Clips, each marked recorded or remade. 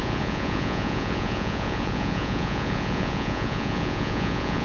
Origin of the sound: remade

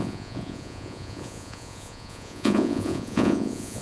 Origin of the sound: remade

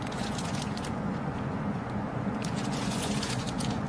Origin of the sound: remade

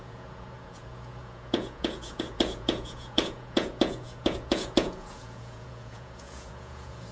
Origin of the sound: remade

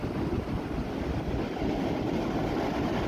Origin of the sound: recorded